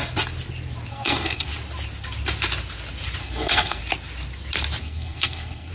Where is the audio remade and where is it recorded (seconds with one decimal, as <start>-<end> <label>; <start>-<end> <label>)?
0.0-0.9 recorded; 0.9-1.5 remade; 1.5-3.2 recorded; 3.2-3.8 remade; 3.8-4.8 recorded; 4.8-5.7 remade